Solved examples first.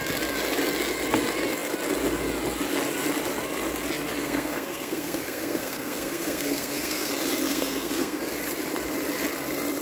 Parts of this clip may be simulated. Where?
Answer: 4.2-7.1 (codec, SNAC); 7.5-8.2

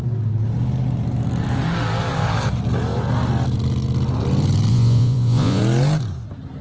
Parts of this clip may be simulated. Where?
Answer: 4.7-5.6 (vocoder, Vocos)

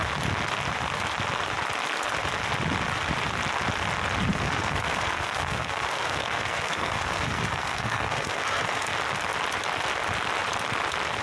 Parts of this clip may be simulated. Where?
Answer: 4.3-8.9 (codec, SNAC)

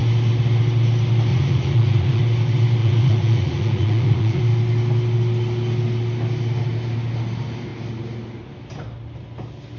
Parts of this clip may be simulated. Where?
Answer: 1.3-2.2 (vocoder, Vocos); 2.8-4.4

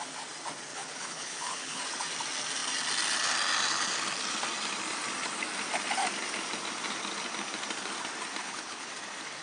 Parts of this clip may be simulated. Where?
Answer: 0.7-1.8 (codec, HILCodec); 8.4-8.9

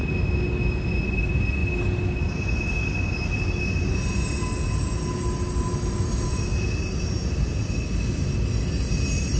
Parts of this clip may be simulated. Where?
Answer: none

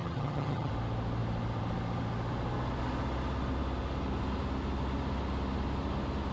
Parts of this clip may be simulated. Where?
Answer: 0.0-0.7 (vocoder, HiFi-GAN)